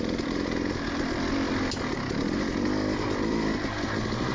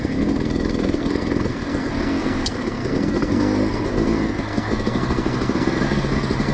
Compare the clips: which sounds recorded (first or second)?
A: first